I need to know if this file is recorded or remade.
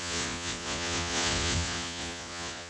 remade